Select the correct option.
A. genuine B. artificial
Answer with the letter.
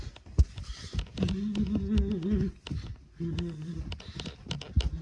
A